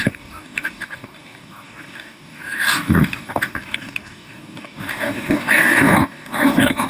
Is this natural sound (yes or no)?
no